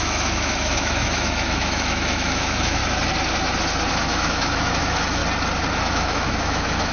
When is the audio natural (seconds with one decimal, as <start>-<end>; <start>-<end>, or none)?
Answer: 2.8-3.9; 5.2-5.7